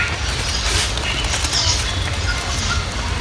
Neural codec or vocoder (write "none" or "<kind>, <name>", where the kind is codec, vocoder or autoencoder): none